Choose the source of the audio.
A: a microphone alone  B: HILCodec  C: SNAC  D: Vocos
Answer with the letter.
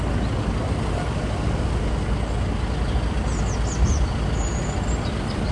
A